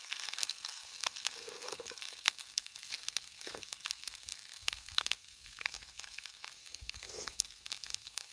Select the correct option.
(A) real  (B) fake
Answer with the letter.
B